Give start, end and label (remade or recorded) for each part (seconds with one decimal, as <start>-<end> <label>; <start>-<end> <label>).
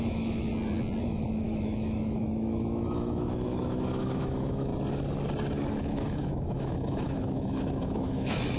0.0-0.5 remade; 0.5-1.0 recorded; 1.0-4.7 remade; 4.7-5.8 recorded; 5.8-8.6 remade